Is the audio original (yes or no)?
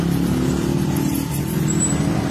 yes